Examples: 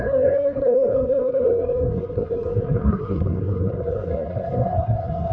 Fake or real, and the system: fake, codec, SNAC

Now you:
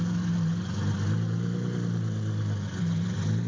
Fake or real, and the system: real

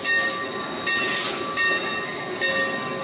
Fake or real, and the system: real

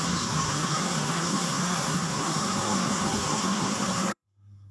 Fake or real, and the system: fake, codec, SNAC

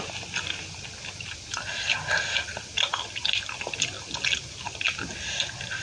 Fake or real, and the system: real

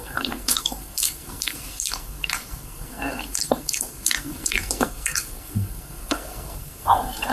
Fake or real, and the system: fake, codec, SNAC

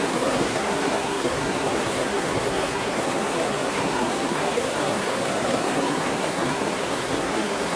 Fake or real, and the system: fake, codec, SNAC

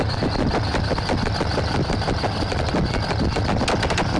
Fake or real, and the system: real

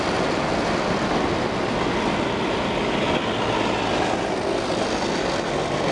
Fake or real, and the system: real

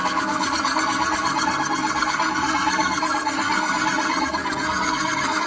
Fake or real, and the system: fake, codec, SNAC